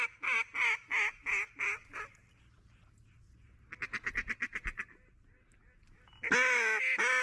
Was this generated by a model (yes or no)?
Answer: no